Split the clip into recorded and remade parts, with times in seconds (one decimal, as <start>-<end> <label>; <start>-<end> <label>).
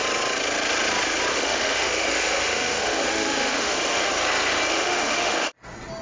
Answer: 0.0-1.3 recorded; 1.3-4.1 remade; 4.1-4.7 recorded; 4.7-5.5 remade; 5.5-6.0 recorded